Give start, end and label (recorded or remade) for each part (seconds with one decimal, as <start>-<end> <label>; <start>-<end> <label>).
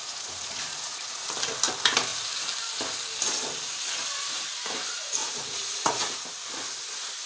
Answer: 0.0-1.3 remade; 1.3-5.2 recorded; 5.2-6.3 remade; 6.3-7.3 recorded